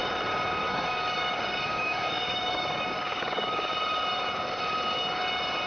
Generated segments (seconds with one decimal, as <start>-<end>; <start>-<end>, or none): 0.6-3.7